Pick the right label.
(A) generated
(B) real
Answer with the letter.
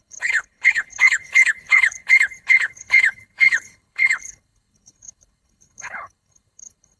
A